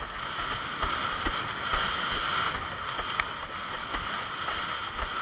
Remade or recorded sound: recorded